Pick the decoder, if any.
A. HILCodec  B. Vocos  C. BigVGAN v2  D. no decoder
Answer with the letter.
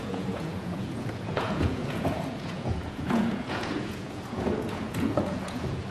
B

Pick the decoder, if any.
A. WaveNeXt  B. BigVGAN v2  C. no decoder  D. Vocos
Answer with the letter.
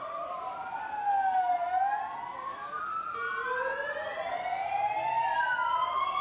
C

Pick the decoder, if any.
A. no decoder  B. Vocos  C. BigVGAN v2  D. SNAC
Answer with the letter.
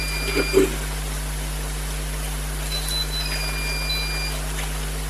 A